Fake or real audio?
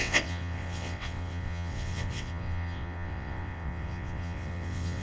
fake